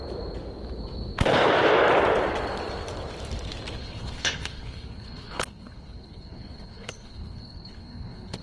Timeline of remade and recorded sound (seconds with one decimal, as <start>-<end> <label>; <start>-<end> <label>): 0.0-3.8 recorded; 3.8-8.4 remade